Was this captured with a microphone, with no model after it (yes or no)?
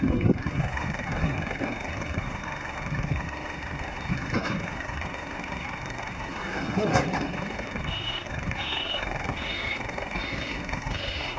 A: no